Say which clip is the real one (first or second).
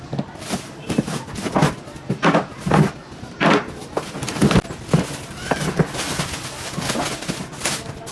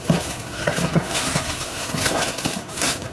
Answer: first